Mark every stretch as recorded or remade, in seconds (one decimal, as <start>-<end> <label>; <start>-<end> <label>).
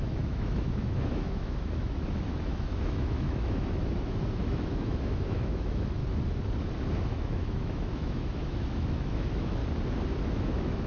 0.0-6.0 remade; 6.0-7.0 recorded; 7.0-9.6 remade; 9.6-10.4 recorded; 10.4-10.9 remade